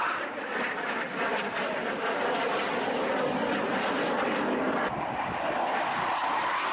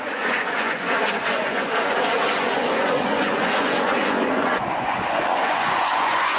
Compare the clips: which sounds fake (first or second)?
second